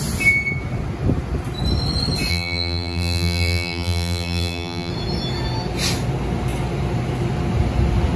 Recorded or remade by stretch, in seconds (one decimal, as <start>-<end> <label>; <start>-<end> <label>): 0.0-2.3 recorded; 2.3-4.9 remade; 4.9-8.2 recorded